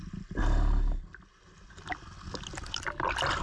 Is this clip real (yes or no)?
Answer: yes